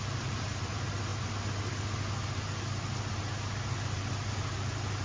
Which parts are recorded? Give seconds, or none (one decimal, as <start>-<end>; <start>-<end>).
0.0-5.0